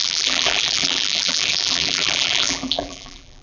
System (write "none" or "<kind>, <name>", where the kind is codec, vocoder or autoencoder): vocoder, BigVGAN v2